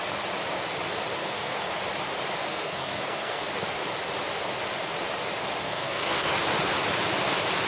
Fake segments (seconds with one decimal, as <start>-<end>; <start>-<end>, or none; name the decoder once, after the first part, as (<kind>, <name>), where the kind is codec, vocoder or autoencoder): 1.2-1.7 (codec, SNAC); 2.5-3.4; 5.6-6.4